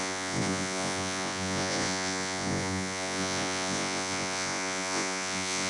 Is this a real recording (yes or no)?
no